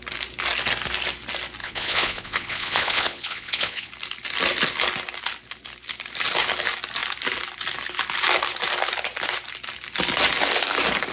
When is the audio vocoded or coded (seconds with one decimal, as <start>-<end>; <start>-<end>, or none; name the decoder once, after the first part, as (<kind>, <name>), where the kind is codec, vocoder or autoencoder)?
1.6-3.9 (vocoder, Vocos)